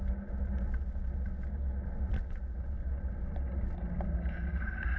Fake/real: real